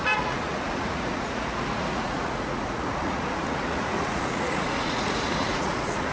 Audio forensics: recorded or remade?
remade